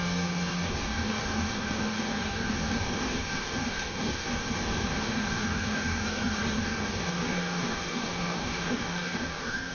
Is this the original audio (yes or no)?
no